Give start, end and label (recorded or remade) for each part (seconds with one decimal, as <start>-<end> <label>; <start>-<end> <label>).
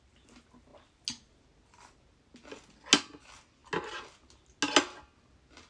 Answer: 0.0-5.7 recorded